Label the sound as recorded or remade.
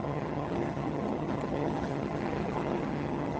remade